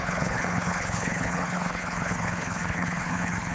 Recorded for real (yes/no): no